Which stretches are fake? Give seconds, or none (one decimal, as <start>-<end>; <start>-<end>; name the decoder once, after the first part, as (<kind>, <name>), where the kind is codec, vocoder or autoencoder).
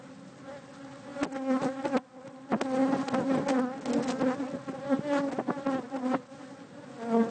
none